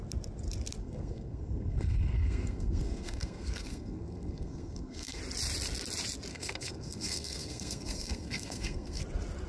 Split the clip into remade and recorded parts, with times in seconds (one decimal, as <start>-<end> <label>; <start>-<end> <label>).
0.0-0.8 recorded; 0.8-5.2 remade; 5.2-6.3 recorded; 6.3-9.0 remade; 9.0-9.5 recorded